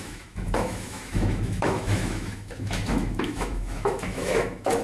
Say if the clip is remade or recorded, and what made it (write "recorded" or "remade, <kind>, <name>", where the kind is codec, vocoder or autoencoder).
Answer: remade, autoencoder, DAC-VAE